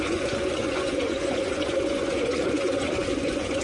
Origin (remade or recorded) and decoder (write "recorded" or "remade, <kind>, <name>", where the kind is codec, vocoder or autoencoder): remade, vocoder, Vocos